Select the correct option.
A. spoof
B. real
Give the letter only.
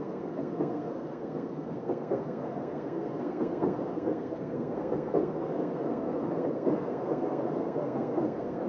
A